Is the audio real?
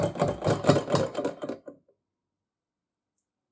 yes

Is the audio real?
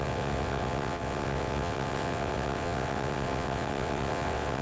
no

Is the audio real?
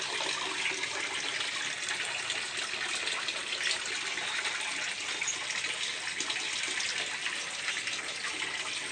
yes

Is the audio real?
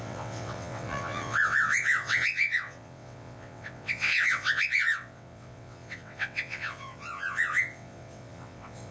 no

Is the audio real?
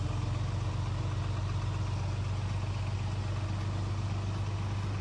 yes